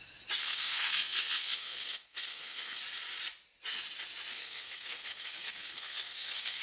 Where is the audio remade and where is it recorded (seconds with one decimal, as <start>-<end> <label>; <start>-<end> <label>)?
0.0-0.4 recorded; 0.4-2.8 remade; 2.8-4.3 recorded; 4.3-6.6 remade